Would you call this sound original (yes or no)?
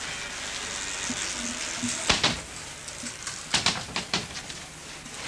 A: yes